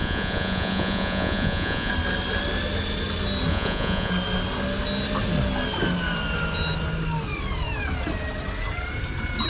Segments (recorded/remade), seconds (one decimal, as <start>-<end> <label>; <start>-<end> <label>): 0.0-1.9 remade; 1.9-3.5 recorded; 3.5-4.1 remade; 4.1-9.5 recorded